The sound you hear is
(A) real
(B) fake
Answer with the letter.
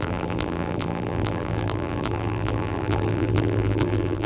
B